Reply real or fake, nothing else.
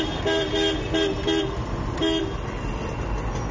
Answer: real